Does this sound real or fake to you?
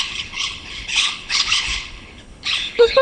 fake